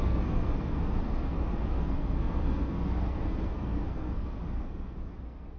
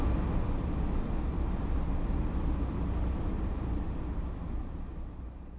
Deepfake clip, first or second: first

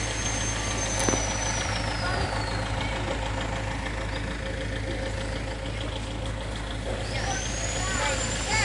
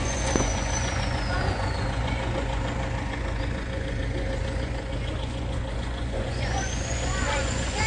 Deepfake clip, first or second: second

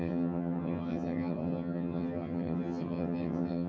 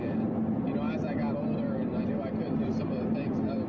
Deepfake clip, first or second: first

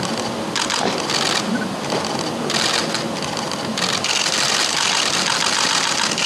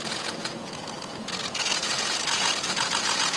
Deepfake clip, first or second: second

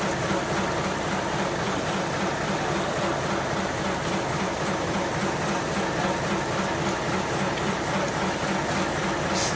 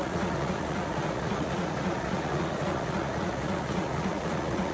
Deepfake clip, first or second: second